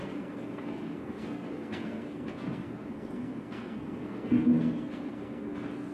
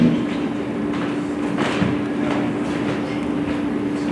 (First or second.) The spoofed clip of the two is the first